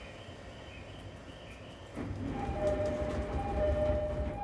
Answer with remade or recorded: recorded